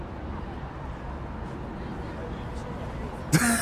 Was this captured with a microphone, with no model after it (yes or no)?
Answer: yes